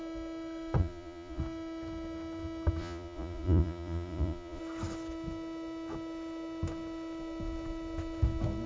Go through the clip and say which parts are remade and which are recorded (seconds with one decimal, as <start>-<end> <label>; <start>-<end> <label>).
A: 0.0-0.8 recorded; 0.8-1.4 remade; 1.4-2.8 recorded; 2.8-4.6 remade; 4.6-8.7 recorded